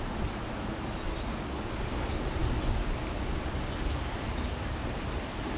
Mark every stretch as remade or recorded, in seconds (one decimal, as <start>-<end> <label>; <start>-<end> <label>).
0.0-5.6 recorded

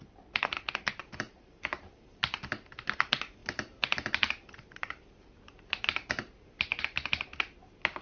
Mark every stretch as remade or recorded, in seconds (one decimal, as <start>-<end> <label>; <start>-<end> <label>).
0.0-1.0 recorded; 1.0-2.7 remade; 2.7-3.4 recorded; 3.4-6.8 remade; 6.8-8.0 recorded

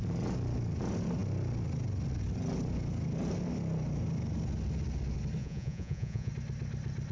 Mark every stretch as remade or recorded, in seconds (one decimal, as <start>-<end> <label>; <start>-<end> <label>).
0.0-5.4 recorded; 5.4-6.3 remade; 6.3-7.1 recorded

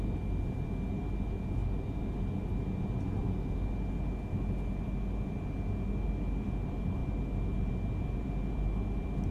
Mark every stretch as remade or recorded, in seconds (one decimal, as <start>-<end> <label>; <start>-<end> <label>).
0.0-9.3 recorded

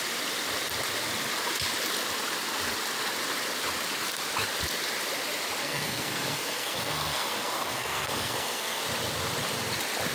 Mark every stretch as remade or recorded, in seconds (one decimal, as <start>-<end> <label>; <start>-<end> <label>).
0.0-5.6 recorded; 5.6-8.8 remade; 8.8-10.1 recorded